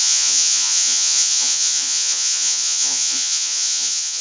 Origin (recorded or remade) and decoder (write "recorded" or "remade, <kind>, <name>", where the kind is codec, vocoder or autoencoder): remade, vocoder, Vocos